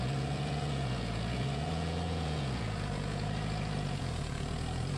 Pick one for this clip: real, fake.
fake